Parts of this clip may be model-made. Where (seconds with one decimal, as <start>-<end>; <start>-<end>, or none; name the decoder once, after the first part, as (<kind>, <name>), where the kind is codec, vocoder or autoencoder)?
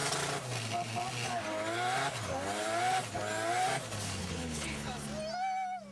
4.2-4.9 (codec, HILCodec)